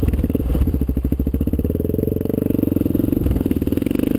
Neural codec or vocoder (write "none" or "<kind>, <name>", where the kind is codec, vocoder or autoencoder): vocoder, BigVGAN v2